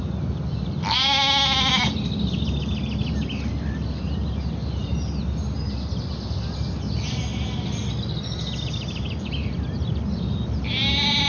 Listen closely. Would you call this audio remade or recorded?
recorded